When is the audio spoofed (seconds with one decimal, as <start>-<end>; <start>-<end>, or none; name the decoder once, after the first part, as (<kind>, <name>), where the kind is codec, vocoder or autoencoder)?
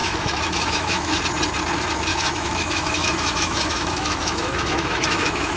0.0-1.2 (autoencoder, DAC-VAE); 2.1-5.6